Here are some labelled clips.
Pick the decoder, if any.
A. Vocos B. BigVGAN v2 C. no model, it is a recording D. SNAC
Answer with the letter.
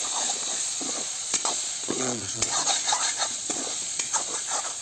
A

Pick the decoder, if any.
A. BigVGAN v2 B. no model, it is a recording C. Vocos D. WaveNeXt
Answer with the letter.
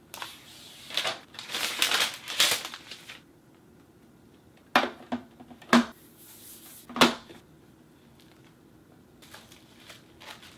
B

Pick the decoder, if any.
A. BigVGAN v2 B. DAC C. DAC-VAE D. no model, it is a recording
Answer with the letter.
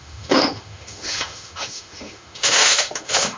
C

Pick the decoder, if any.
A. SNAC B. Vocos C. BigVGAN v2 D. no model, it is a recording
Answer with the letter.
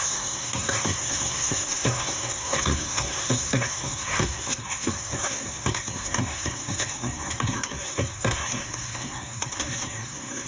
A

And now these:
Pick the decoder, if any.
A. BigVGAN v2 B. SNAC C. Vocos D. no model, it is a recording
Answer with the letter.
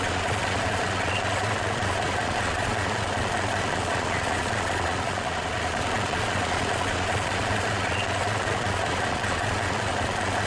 C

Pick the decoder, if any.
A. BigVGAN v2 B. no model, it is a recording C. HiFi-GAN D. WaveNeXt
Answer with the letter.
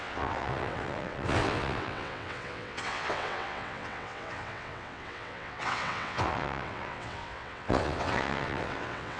D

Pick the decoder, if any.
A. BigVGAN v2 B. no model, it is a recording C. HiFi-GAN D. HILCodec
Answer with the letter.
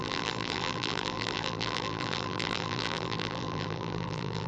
A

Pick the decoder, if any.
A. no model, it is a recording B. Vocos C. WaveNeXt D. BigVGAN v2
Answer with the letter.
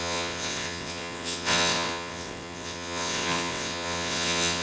C